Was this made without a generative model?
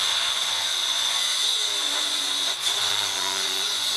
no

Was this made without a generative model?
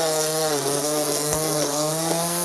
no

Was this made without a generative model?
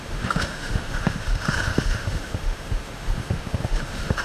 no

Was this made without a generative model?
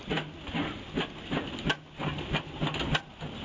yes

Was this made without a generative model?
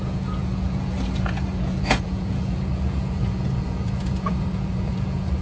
no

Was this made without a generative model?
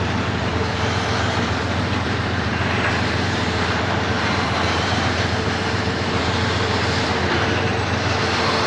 no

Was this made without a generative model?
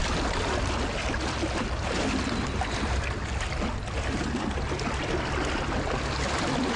yes